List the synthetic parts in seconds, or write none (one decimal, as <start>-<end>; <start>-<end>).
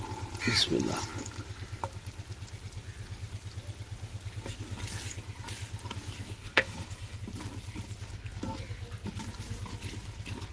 6.4-7.2